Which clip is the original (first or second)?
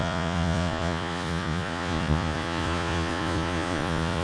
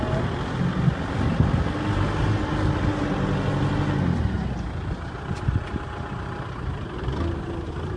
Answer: second